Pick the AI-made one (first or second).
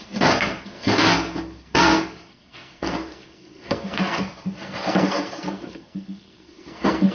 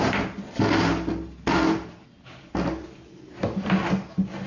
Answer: first